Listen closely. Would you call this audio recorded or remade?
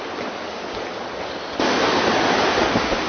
recorded